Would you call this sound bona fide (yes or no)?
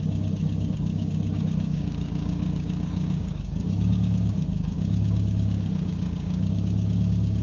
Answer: no